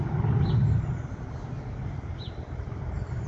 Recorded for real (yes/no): yes